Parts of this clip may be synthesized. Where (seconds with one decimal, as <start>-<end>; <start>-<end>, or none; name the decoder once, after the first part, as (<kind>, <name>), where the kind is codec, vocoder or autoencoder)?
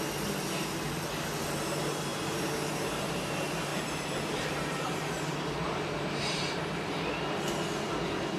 2.1-3.3 (vocoder, BigVGAN v2); 3.7-6.4